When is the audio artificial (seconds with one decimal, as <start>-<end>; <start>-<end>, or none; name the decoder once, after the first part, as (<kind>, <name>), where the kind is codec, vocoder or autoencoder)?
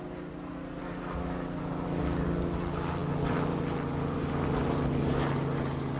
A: none